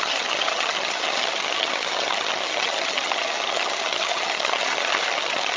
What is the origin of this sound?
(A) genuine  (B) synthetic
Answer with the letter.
B